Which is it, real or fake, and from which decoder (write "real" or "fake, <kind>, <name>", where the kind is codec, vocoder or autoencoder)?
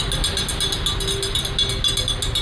real